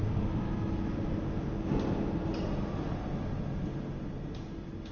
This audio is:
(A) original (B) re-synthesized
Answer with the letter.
A